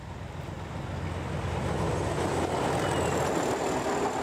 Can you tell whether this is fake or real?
real